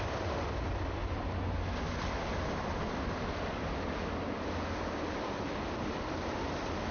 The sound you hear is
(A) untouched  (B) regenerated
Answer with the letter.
A